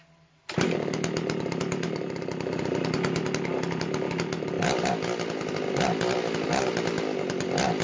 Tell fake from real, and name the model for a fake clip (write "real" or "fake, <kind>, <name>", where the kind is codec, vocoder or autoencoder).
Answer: real